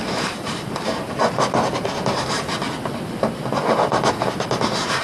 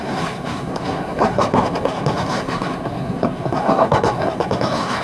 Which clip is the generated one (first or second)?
second